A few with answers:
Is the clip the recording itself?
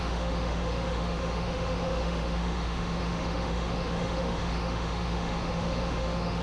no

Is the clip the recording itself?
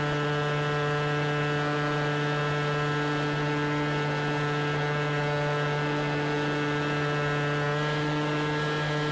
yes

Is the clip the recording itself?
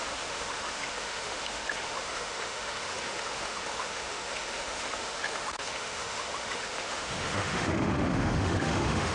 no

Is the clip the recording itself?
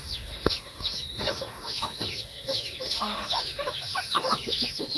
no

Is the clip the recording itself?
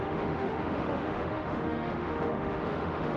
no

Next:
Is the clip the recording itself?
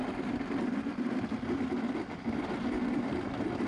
yes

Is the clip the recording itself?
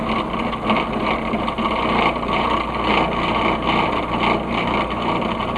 yes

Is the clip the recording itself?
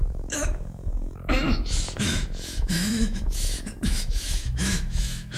no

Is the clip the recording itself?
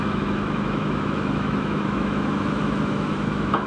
no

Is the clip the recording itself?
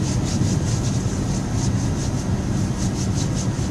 yes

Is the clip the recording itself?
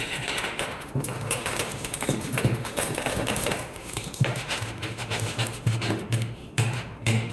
no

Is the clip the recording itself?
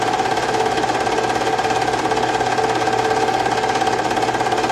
yes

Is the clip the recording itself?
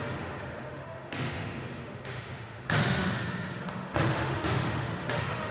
no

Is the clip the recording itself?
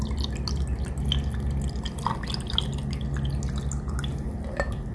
yes